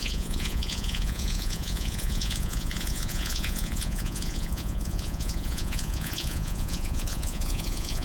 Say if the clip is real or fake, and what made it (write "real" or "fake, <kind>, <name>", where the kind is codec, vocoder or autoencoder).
fake, vocoder, Vocos